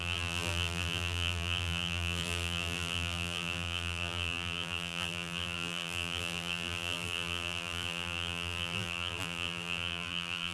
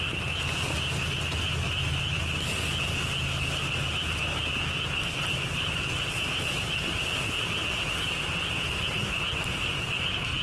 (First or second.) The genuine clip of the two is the second